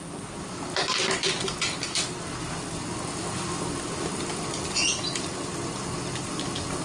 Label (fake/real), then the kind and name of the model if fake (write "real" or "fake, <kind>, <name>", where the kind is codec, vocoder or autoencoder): real